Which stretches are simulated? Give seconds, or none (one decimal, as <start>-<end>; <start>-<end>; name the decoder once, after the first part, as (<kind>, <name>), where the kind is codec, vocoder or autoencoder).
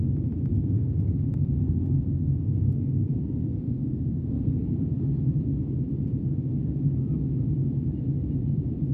0.5-4.9 (codec, SNAC)